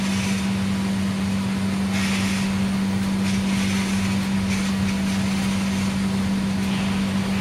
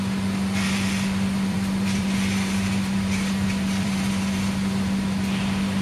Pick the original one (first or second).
first